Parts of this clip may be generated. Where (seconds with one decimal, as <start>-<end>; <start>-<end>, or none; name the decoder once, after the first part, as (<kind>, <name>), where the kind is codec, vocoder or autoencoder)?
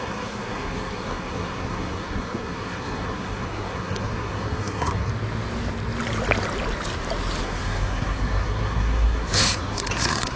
0.0-5.1 (codec, SNAC); 7.4-10.4